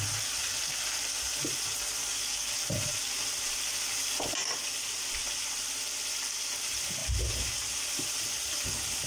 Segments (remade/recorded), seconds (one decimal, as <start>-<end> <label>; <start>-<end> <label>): 0.0-2.0 recorded; 2.0-2.5 remade; 2.5-9.1 recorded